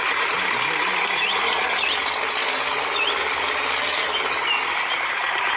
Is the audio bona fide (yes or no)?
yes